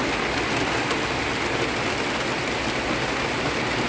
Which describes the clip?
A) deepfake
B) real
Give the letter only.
B